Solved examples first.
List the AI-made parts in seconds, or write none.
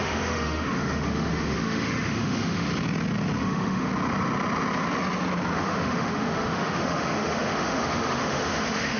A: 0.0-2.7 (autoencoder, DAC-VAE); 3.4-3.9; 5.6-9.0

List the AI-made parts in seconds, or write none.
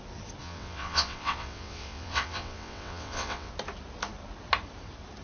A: 0.4-3.5 (vocoder, WaveNeXt)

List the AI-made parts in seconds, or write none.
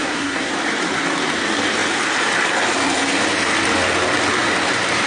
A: 0.0-0.5 (codec, SNAC)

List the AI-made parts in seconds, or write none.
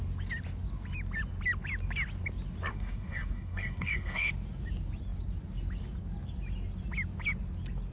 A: 2.7-4.3 (codec, SNAC)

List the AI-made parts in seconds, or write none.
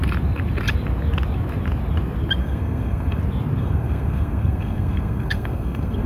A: 2.4-3.2 (codec, SNAC); 3.6-6.1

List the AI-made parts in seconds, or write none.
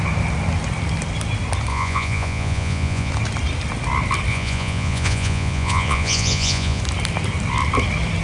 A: 1.7-3.1 (vocoder, Vocos); 4.3-6.8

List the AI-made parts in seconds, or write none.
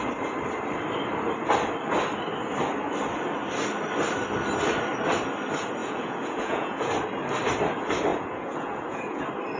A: 5.8-6.9 (vocoder, Vocos); 8.1-9.2